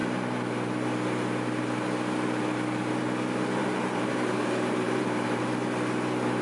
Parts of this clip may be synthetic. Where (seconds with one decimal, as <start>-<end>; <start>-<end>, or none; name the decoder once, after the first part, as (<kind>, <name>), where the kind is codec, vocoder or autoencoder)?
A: 3.6-5.4 (vocoder, BigVGAN v2)